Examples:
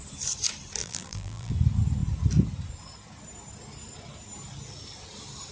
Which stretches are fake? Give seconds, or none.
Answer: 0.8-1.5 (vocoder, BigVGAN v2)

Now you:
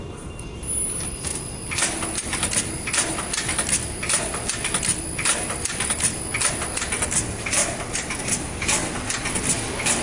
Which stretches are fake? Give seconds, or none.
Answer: 0.0-7.6 (vocoder, BigVGAN v2); 8.2-8.8